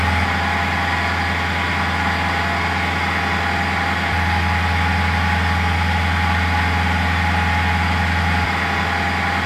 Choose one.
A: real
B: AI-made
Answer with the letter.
A